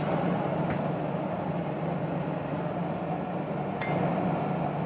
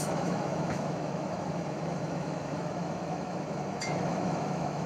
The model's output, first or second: second